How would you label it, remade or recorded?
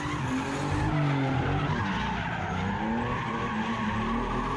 recorded